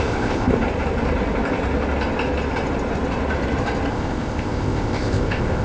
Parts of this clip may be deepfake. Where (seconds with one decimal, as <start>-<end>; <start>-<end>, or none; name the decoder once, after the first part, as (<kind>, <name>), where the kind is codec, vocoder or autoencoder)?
0.0-0.5 (codec, ZipCodec); 3.9-5.6